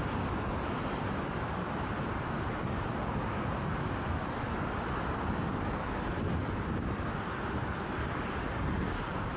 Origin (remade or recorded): recorded